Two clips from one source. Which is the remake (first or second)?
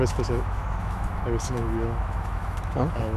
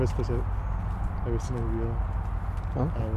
first